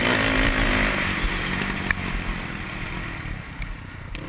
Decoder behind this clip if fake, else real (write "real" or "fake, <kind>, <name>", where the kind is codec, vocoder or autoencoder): real